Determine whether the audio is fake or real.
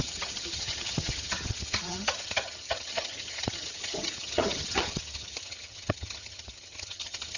fake